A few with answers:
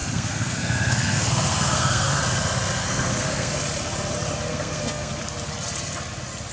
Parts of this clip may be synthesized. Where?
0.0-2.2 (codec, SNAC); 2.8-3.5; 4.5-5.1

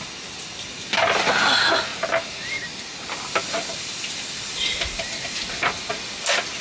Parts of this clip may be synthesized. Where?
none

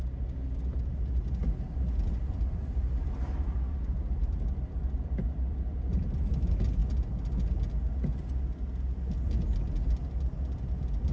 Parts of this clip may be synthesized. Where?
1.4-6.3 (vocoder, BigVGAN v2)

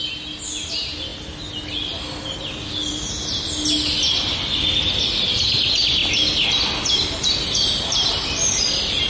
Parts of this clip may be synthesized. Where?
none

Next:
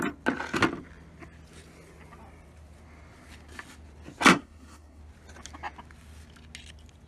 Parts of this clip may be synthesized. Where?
4.3-5.0 (codec, SNAC)

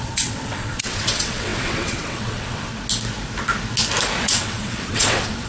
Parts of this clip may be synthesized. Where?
0.0-2.7 (vocoder, WaveNeXt); 4.2-5.5

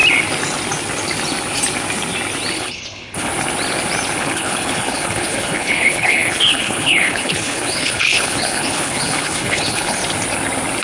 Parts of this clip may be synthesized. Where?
2.5-3.3 (codec, HILCodec); 4.2-10.0